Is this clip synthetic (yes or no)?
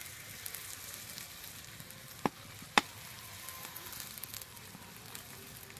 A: no